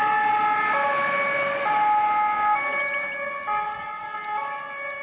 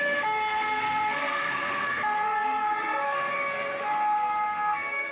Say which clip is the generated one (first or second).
second